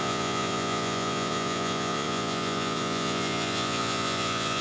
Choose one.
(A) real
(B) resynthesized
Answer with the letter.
B